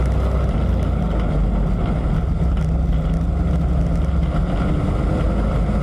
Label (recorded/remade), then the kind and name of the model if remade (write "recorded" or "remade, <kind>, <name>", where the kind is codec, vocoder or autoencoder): recorded